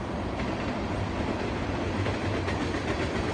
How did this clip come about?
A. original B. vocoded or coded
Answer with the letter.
A